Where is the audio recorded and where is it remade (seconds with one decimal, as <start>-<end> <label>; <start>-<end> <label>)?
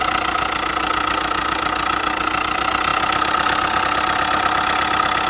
0.0-5.3 recorded